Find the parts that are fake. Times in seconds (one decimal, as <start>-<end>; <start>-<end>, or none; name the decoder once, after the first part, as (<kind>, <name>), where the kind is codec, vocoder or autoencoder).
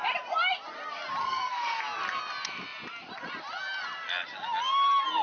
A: 1.2-1.8 (codec, SNAC)